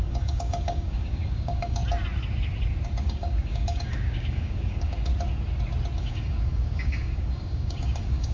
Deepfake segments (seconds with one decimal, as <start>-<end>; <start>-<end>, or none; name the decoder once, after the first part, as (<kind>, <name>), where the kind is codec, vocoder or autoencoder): 0.0-1.8 (codec, DAC); 3.0-5.1; 6.0-8.3